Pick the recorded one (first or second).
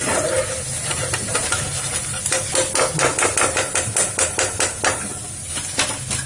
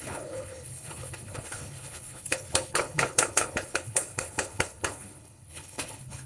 first